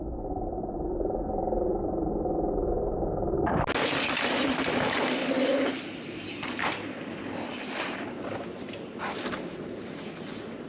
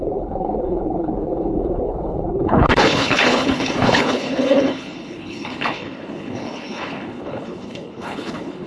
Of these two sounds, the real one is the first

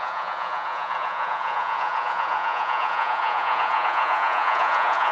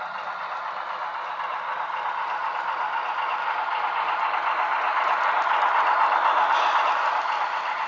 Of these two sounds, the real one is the second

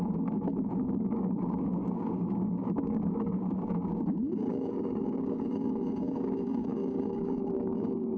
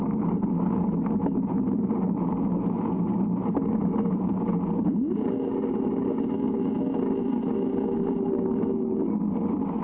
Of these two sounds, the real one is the second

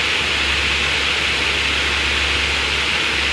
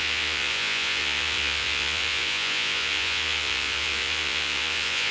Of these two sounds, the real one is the first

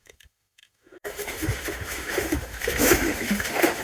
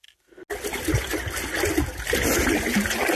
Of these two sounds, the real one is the second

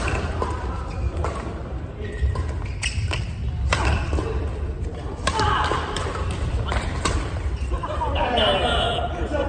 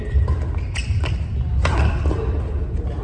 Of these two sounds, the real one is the second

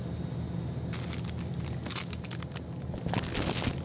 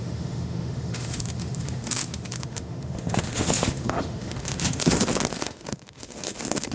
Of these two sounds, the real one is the first